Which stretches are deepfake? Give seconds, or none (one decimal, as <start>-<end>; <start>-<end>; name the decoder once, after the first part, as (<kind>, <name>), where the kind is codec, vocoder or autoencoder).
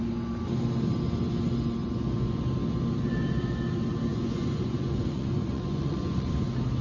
1.8-2.4 (vocoder, Vocos); 4.1-6.3